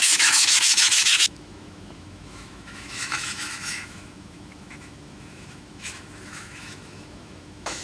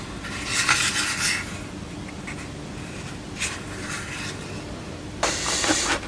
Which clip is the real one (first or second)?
second